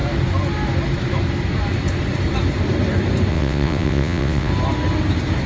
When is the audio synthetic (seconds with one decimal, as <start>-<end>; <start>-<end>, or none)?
3.3-4.5